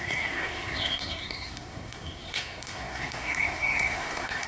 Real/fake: fake